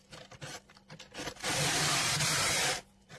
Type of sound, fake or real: real